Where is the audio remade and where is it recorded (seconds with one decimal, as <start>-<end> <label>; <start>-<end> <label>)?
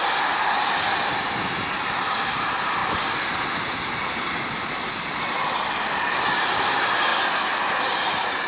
0.0-8.5 recorded